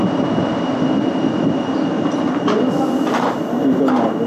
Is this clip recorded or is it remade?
recorded